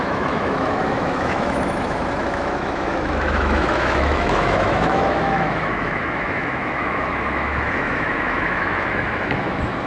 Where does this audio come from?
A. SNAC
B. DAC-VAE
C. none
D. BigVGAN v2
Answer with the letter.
B